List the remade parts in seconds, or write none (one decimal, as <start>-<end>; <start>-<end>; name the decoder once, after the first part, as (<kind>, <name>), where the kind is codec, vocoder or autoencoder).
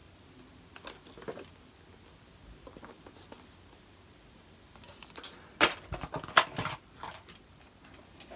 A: none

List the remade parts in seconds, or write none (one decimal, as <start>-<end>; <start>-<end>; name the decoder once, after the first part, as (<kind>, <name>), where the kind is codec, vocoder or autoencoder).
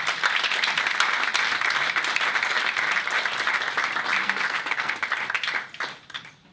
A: 4.2-5.0 (codec, SNAC)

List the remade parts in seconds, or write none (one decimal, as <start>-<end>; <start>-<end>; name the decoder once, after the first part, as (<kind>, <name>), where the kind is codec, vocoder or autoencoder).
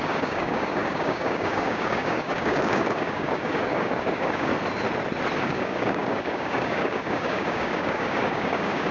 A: 0.0-4.5 (codec, DAC); 5.4-8.9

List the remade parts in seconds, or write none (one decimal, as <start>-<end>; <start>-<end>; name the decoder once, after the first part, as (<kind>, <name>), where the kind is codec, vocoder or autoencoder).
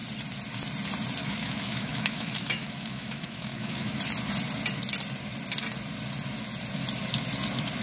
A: 1.2-4.0 (autoencoder, DAC-VAE)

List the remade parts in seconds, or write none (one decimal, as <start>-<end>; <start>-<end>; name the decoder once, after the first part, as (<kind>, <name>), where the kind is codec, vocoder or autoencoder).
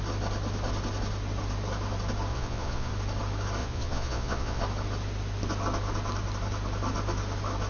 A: 2.3-2.9 (vocoder, Vocos); 3.6-4.6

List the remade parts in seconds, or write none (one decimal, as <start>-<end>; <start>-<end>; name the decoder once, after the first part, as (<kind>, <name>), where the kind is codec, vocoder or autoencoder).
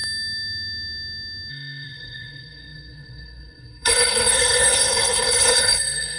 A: 1.5-6.2 (codec, SNAC)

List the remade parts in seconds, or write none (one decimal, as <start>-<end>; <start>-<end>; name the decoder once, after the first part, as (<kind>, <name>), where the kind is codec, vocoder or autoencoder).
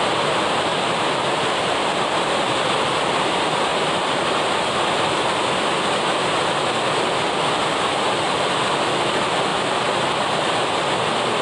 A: 0.7-1.9 (vocoder, BigVGAN v2); 3.7-4.4